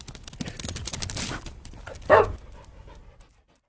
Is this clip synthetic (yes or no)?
no